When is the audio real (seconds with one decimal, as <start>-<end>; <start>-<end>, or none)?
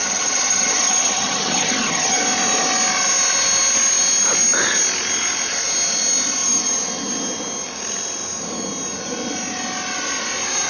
2.2-10.7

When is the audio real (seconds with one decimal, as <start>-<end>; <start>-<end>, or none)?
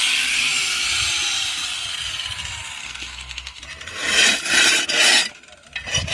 0.0-2.8; 3.6-6.1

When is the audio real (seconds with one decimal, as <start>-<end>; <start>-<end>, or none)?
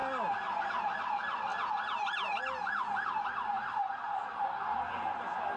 0.0-0.6; 1.5-4.9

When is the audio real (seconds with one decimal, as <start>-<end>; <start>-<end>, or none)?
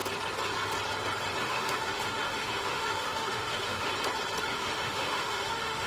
0.0-1.4; 3.9-4.4